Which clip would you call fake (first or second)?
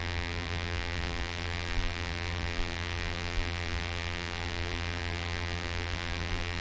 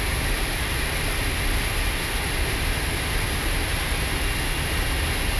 first